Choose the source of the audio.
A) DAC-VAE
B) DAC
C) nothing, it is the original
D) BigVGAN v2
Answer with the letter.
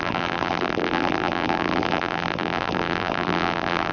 D